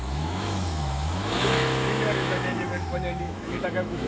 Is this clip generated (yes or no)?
yes